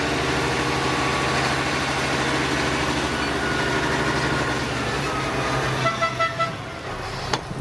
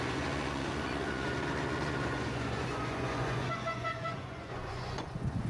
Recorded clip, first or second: first